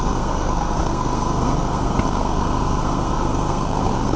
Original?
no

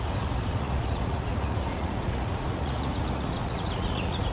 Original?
no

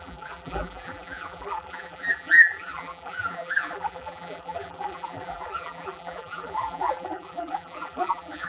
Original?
no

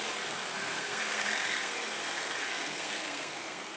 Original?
no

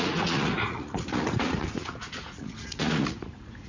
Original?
no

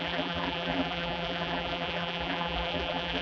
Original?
no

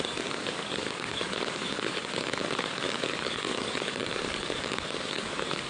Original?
no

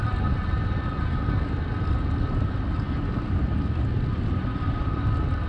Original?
yes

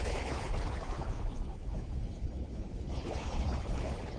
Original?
no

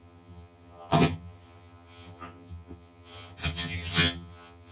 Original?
no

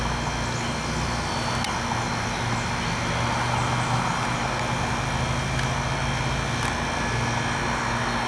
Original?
yes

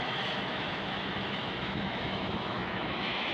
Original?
no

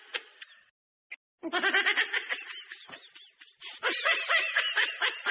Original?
yes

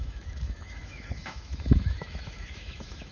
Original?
no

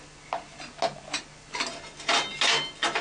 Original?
yes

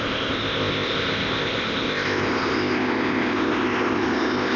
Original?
no